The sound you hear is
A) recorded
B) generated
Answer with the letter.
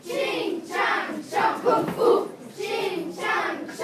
A